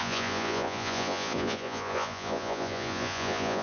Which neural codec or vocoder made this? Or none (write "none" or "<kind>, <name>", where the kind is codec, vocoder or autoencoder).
vocoder, Vocos